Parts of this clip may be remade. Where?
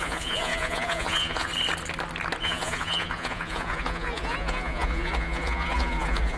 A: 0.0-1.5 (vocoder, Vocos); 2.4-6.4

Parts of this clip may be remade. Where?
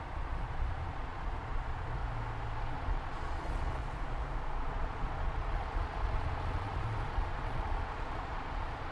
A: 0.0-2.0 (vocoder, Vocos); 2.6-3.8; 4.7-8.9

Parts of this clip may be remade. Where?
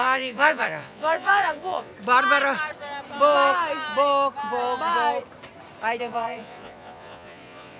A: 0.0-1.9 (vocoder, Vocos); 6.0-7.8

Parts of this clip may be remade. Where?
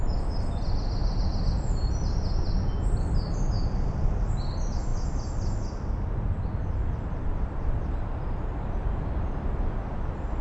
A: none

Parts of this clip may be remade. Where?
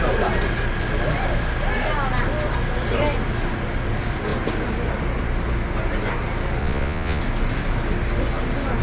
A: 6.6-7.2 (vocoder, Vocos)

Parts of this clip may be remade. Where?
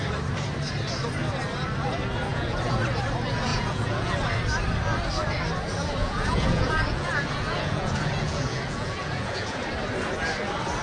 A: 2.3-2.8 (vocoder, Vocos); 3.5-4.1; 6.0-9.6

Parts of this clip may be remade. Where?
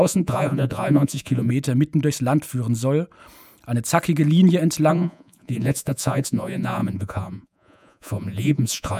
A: 0.0-1.5 (vocoder, Vocos); 4.9-9.0